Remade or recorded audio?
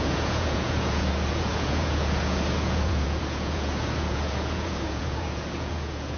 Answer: remade